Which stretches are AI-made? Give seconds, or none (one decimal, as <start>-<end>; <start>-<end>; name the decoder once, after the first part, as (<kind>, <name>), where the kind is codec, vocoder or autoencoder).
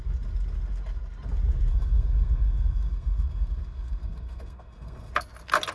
1.7-5.1 (codec, SNAC)